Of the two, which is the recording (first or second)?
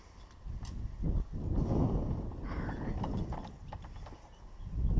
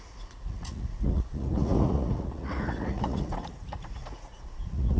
first